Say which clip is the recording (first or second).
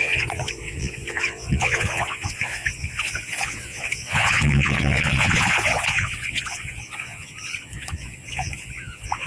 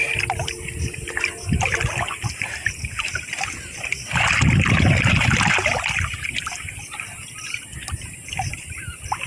second